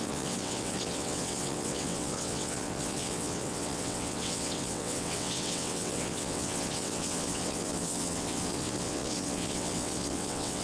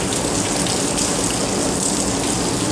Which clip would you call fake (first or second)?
first